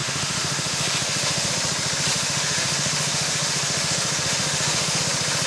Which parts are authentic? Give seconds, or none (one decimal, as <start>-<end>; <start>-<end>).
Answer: 1.5-2.1; 5.0-5.5